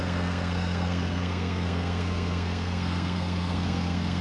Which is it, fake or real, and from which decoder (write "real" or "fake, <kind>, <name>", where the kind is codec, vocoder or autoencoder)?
fake, codec, SNAC